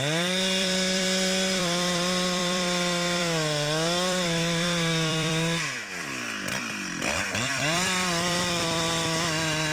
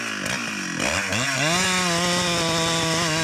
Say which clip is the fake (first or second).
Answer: first